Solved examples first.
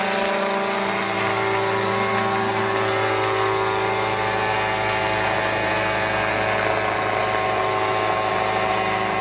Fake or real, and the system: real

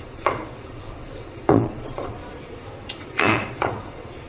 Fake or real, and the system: fake, vocoder, Vocos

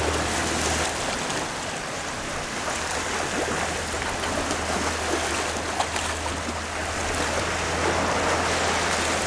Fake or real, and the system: real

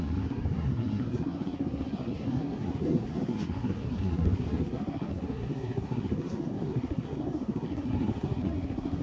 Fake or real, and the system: fake, codec, SNAC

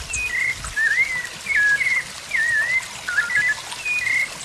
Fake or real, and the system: real